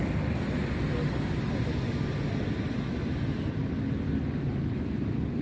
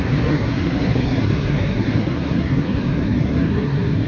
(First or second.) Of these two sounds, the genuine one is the first